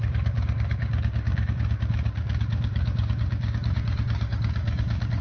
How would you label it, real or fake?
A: fake